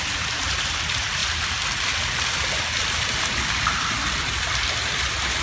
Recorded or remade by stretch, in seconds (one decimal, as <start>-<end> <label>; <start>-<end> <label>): 0.0-5.4 recorded